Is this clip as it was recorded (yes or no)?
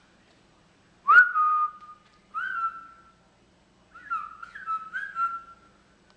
yes